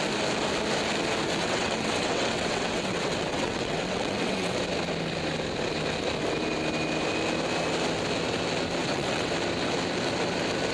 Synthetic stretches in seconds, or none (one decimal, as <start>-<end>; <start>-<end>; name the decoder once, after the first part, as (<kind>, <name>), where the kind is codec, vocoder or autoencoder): 1.4-4.6 (vocoder, WaveNeXt); 8.8-9.3